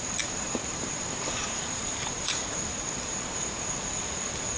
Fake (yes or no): yes